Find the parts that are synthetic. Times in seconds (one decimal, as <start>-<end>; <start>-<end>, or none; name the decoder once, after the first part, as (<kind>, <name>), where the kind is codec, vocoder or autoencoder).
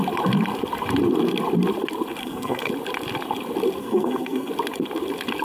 2.2-2.7 (codec, SNAC); 3.8-4.5